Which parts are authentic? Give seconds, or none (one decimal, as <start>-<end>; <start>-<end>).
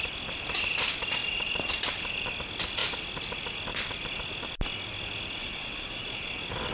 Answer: 0.0-5.4; 6.3-6.7